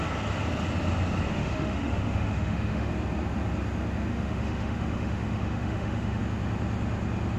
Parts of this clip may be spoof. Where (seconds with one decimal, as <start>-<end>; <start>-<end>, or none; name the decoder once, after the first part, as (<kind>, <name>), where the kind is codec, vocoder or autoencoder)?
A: 1.3-2.9 (autoencoder, DAC-VAE); 4.1-6.2